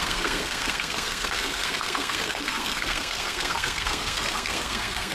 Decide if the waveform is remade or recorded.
remade